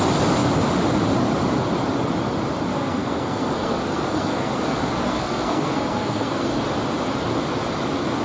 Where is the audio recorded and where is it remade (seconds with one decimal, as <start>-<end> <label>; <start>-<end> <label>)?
0.0-2.7 recorded; 2.7-6.6 remade; 6.6-8.2 recorded